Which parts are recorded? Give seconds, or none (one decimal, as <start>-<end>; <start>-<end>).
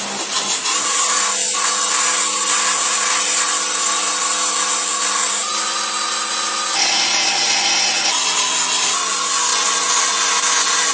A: 0.0-10.9